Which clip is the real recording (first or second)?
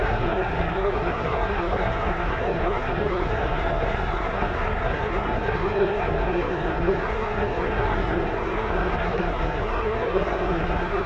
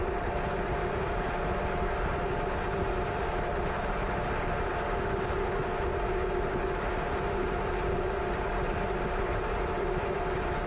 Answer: second